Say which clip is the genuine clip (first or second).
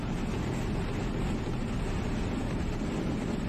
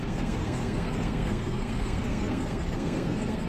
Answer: first